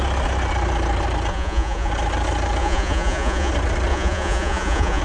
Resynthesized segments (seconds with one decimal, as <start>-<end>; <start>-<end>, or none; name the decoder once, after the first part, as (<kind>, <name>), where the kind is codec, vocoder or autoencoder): 1.3-1.9 (vocoder, Vocos); 2.6-3.5; 3.9-5.0